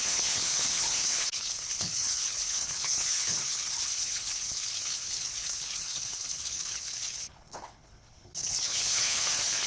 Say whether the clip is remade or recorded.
remade